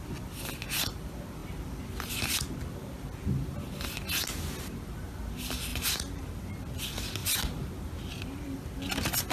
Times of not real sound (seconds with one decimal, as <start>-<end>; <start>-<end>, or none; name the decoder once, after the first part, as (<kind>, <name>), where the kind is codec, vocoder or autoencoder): 5.7-6.5 (vocoder, BigVGAN v2)